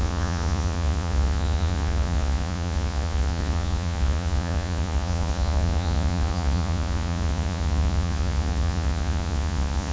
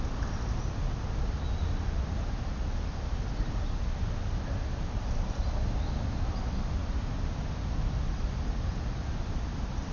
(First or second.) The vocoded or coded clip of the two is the first